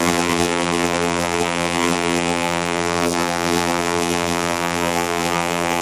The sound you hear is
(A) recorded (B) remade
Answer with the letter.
B